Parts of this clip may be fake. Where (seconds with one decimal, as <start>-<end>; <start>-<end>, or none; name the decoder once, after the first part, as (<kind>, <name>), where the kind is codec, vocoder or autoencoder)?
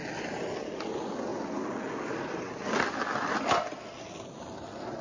none